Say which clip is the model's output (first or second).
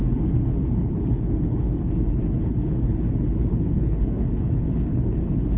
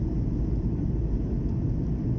first